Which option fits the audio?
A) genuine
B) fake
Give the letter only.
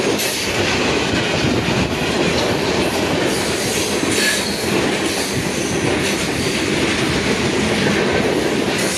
A